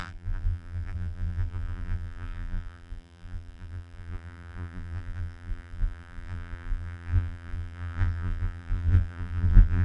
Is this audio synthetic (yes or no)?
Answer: yes